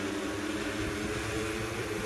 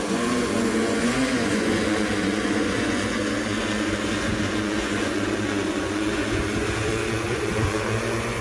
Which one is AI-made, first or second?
second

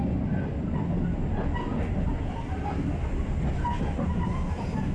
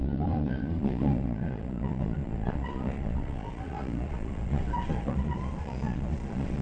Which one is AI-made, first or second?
second